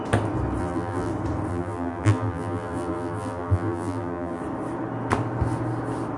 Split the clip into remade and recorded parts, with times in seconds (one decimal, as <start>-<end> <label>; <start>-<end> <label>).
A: 0.0-0.6 recorded; 0.6-1.1 remade; 1.1-1.5 recorded; 1.5-4.4 remade; 4.4-6.2 recorded